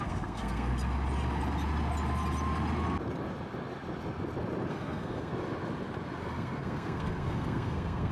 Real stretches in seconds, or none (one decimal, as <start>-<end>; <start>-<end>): 0.7-4.7; 5.3-6.2